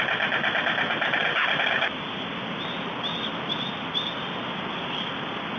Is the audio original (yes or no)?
yes